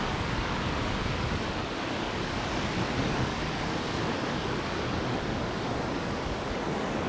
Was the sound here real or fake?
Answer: fake